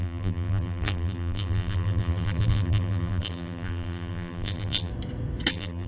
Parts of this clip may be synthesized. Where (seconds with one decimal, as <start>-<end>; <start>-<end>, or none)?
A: 0.0-4.9; 5.5-5.9